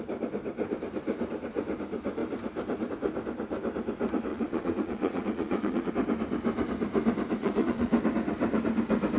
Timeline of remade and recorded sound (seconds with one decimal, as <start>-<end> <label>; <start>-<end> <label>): 0.0-4.3 recorded; 4.3-5.9 remade; 5.9-7.4 recorded; 7.4-7.9 remade; 7.9-9.2 recorded